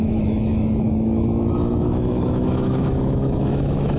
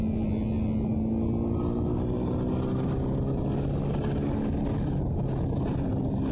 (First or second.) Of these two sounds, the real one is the second